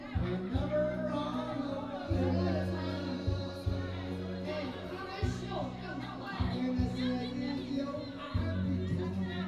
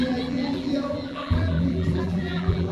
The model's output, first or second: second